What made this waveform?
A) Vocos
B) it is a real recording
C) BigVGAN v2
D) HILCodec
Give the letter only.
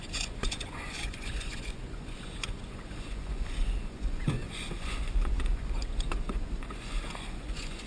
A